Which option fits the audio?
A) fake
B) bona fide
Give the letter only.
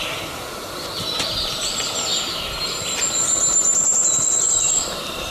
B